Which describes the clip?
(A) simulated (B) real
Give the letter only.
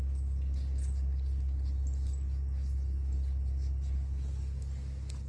B